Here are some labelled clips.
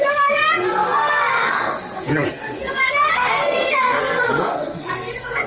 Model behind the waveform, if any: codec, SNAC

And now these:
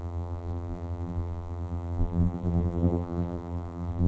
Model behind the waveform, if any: vocoder, BigVGAN v2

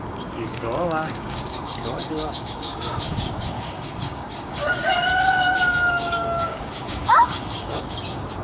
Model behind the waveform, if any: codec, DAC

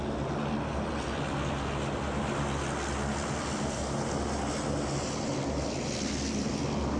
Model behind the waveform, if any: none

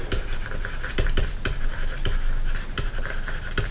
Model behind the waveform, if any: none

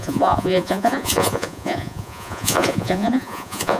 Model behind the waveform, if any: vocoder, Vocos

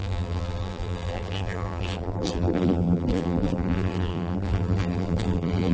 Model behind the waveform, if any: vocoder, BigVGAN v2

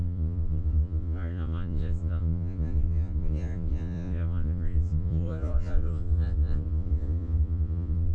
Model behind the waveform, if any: vocoder, Vocos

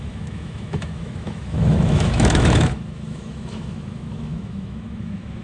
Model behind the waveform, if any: autoencoder, DAC-VAE